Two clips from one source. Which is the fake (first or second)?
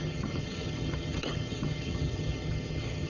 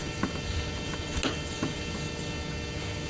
first